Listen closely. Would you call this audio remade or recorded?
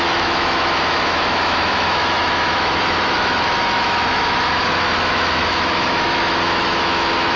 remade